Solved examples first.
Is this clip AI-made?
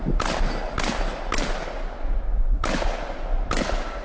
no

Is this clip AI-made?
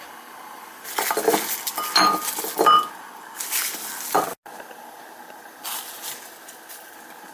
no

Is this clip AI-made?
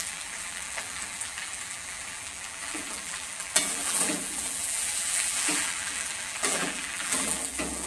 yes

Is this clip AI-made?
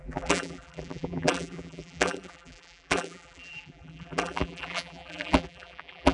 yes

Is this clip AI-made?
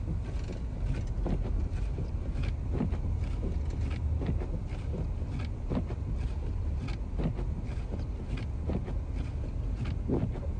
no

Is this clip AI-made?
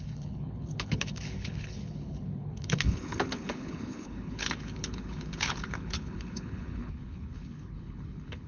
yes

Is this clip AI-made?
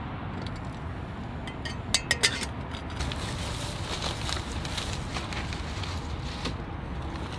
no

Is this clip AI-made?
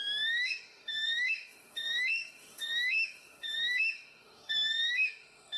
yes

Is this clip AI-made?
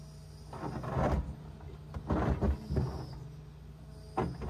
no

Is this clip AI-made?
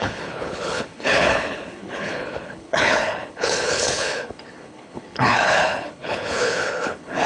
yes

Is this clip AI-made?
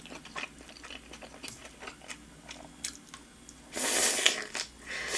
no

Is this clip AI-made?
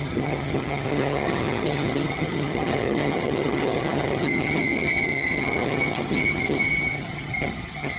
yes